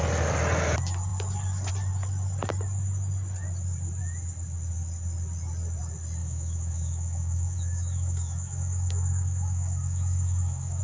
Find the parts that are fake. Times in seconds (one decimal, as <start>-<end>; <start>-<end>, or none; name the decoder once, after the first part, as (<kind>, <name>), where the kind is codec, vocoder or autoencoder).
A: 6.2-10.8 (autoencoder, DAC-VAE)